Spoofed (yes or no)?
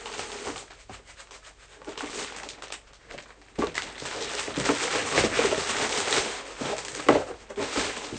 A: no